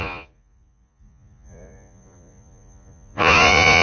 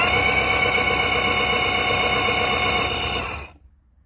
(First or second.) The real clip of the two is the second